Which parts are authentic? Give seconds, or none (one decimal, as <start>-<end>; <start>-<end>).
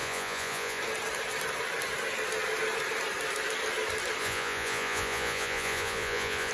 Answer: 0.8-4.2